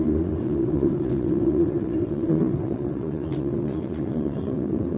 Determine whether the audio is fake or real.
fake